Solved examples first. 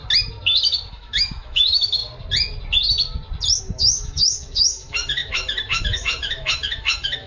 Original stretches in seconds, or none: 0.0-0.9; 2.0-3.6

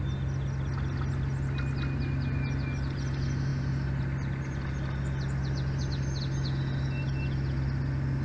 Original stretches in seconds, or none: 0.0-8.2

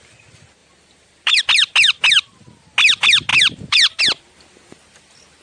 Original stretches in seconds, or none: 0.0-0.6; 1.4-3.3; 4.0-5.4

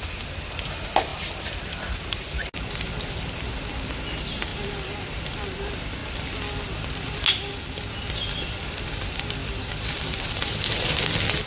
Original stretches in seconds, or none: 0.0-11.5

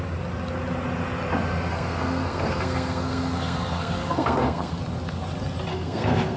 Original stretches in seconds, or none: 0.0-1.7; 4.8-5.7

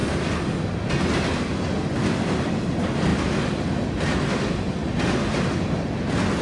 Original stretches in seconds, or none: 0.0-6.4

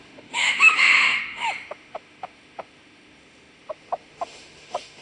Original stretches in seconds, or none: none